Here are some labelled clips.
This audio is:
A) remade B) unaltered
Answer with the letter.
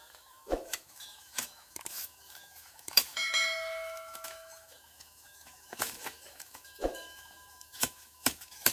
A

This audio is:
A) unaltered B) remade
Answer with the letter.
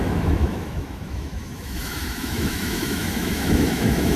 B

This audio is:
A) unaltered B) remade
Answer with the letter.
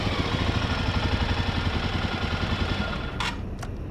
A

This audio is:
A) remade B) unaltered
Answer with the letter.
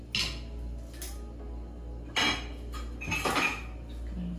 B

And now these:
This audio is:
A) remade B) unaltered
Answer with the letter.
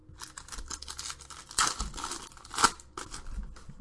B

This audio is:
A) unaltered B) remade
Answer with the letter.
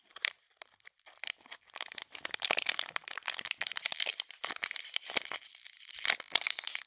B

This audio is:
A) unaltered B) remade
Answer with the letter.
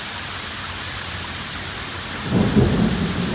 A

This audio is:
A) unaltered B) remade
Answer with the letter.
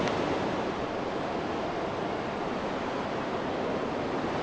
A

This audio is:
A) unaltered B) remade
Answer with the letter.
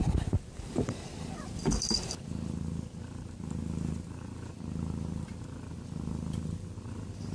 B